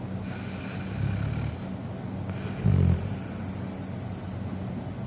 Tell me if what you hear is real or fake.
real